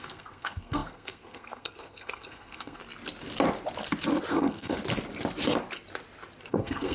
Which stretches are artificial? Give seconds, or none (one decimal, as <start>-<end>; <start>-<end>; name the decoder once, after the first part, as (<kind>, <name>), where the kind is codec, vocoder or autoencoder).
0.0-2.8 (codec, SNAC); 4.3-4.8; 6.5-6.9